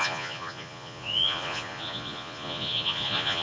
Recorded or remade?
remade